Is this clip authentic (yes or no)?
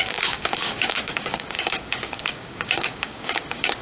no